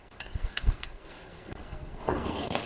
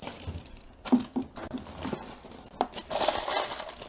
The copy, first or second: first